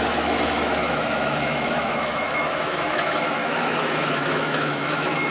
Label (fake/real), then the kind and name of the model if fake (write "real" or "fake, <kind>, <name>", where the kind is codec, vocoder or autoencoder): fake, autoencoder, DAC-VAE